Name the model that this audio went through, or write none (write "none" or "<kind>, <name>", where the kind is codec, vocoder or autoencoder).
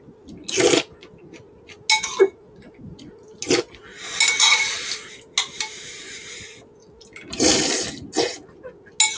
none